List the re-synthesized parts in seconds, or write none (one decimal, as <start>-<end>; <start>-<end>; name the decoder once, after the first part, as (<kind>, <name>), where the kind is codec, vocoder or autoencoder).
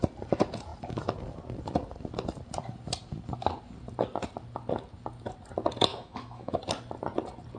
5.9-6.6 (autoencoder, DAC-VAE)